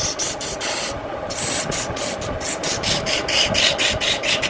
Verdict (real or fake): real